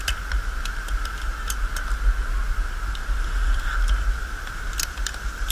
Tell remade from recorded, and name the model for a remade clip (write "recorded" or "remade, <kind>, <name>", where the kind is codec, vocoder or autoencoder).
recorded